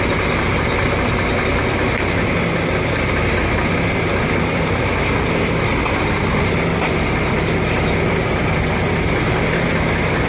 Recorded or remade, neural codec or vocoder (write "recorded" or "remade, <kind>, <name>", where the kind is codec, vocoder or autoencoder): recorded